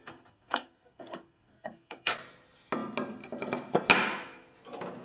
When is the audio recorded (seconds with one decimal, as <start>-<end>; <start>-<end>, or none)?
2.1-5.0